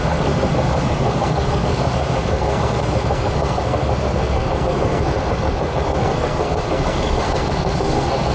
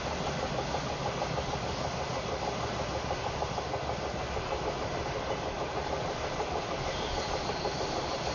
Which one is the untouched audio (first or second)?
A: second